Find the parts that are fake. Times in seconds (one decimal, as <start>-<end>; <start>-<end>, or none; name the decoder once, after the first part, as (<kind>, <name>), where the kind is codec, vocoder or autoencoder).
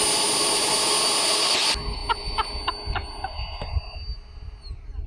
none